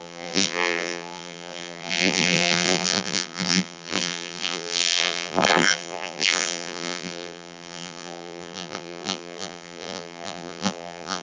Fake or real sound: fake